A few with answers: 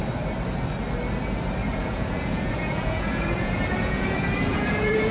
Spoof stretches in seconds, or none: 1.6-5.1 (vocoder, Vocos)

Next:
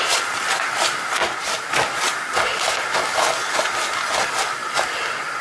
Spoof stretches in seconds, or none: 0.0-4.6 (vocoder, BigVGAN v2)

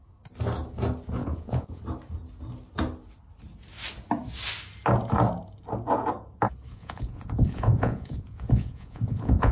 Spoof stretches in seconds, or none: 1.2-1.8 (vocoder, Vocos); 6.7-9.5